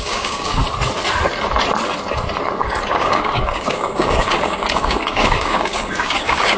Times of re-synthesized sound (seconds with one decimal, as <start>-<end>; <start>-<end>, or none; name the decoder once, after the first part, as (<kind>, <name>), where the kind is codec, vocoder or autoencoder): 0.0-0.6 (codec, DAC); 2.9-6.6